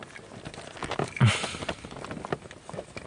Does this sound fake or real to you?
real